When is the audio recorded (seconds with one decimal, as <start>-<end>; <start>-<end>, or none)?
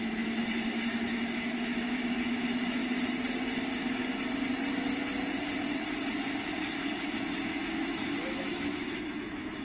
2.8-7.1